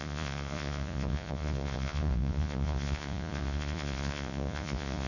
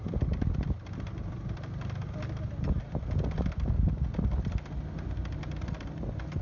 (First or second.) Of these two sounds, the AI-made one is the first